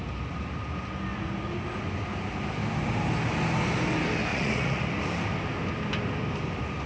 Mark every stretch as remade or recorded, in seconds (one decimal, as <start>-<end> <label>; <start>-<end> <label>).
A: 0.0-4.3 recorded; 4.3-4.8 remade; 4.8-6.9 recorded